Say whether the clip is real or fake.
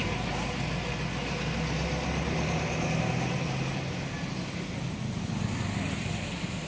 real